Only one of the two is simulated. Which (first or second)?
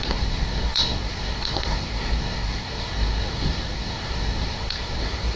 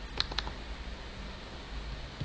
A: first